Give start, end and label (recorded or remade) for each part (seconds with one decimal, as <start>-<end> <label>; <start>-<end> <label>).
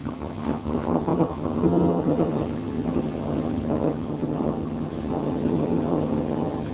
0.0-6.7 remade